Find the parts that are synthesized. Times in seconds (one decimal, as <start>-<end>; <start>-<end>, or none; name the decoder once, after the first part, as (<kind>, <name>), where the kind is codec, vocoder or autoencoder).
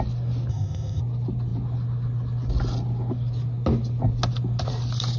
0.5-1.0 (codec, ZipCodec)